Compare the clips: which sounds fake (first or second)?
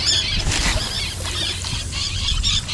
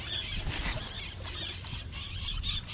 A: second